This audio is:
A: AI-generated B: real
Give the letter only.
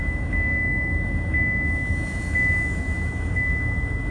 A